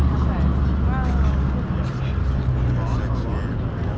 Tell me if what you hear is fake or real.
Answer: real